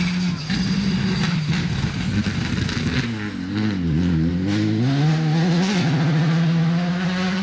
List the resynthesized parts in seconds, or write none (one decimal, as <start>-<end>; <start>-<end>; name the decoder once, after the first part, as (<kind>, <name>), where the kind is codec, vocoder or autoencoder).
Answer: none